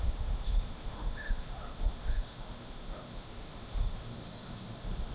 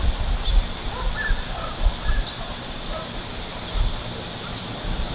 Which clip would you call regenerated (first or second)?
first